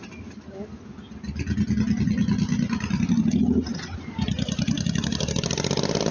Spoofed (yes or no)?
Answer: no